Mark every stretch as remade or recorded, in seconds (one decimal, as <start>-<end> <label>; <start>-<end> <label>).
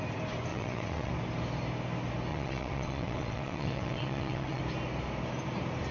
0.0-0.5 recorded; 0.5-1.1 remade; 1.1-2.3 recorded; 2.3-4.6 remade; 4.6-5.9 recorded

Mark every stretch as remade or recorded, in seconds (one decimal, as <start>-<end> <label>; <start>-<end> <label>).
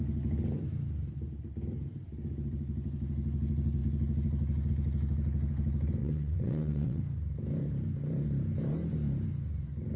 0.0-6.0 recorded; 6.0-7.0 remade; 7.0-10.0 recorded